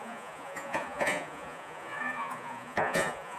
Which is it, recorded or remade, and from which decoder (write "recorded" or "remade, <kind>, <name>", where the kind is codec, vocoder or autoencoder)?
remade, vocoder, Vocos